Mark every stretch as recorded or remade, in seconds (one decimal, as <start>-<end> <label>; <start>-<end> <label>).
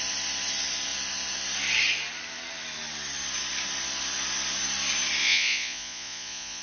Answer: 0.0-5.2 recorded; 5.2-6.6 remade